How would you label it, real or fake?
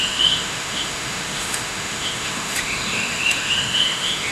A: fake